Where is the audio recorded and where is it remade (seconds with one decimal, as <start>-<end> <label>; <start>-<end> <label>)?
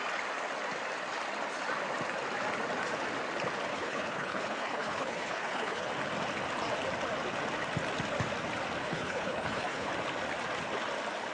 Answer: 0.0-3.7 recorded; 3.7-5.9 remade; 5.9-8.8 recorded; 8.8-9.9 remade; 9.9-11.3 recorded